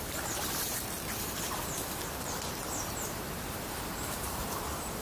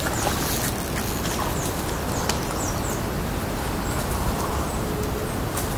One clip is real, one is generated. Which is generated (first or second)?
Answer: first